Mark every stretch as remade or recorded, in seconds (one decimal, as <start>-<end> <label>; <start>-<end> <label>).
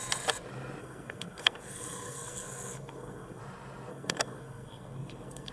0.0-0.8 recorded; 0.8-3.4 remade; 3.4-3.9 recorded; 3.9-5.5 remade